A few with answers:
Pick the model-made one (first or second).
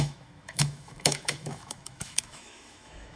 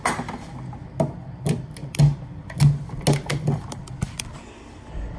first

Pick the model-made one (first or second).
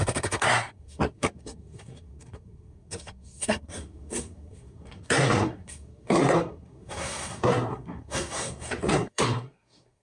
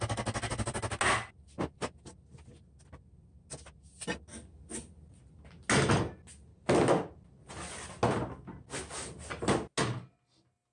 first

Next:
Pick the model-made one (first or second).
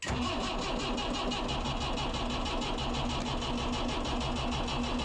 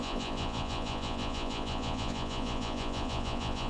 second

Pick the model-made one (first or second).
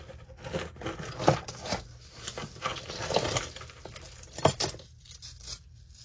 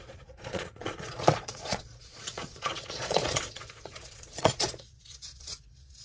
second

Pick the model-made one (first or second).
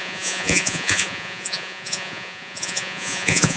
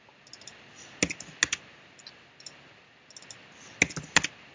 first